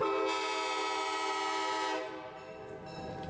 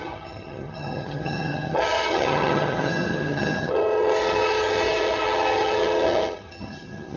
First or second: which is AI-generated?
second